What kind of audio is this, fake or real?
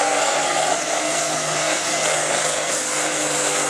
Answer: fake